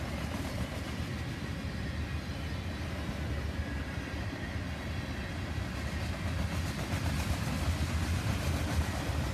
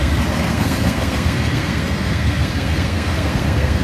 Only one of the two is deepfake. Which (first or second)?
second